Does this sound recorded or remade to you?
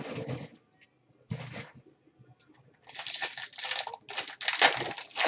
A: recorded